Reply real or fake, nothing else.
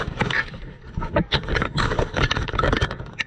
fake